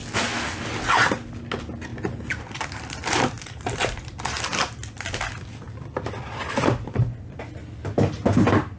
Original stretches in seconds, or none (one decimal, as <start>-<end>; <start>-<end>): 0.0-8.8